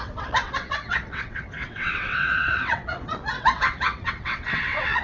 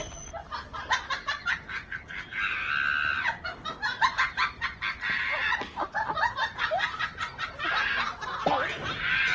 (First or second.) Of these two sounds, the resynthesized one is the first